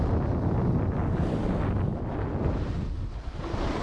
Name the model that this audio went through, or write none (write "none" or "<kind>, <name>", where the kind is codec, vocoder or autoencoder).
none